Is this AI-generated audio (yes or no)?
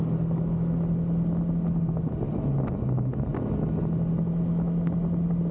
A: no